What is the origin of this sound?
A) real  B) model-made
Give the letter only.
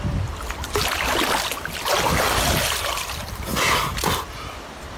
A